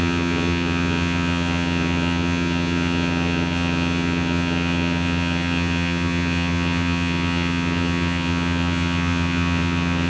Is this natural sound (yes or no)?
no